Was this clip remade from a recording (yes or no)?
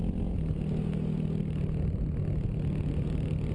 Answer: no